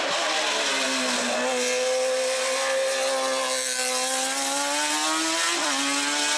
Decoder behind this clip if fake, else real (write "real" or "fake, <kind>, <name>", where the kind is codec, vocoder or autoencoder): real